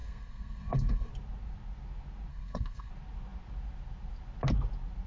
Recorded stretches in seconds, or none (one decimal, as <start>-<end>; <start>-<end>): 1.1-2.3; 2.9-5.1